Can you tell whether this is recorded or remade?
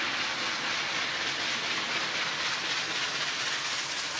recorded